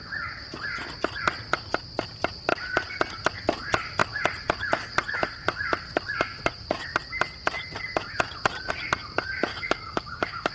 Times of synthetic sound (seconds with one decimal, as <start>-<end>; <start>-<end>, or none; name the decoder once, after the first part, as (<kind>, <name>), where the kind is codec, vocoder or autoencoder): 9.5-10.5 (codec, DAC)